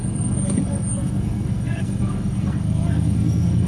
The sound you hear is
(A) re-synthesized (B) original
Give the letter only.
A